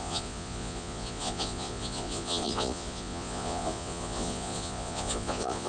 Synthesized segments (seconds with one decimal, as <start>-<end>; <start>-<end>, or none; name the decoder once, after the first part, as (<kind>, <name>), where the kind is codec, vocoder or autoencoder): 0.0-5.7 (vocoder, Vocos)